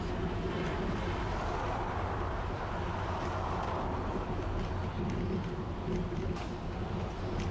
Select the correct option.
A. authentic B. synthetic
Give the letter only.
A